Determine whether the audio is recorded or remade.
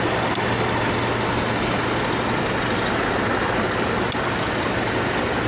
recorded